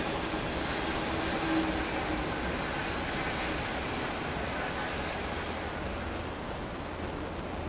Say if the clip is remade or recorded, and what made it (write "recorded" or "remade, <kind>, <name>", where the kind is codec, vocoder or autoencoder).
recorded